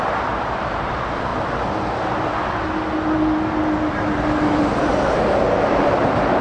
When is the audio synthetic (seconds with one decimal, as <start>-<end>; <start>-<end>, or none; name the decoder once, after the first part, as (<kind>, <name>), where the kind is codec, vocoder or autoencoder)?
0.0-1.3 (vocoder, BigVGAN v2); 5.0-6.4